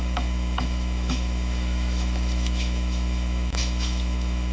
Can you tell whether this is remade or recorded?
remade